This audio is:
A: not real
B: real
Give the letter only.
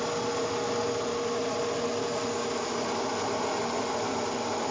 B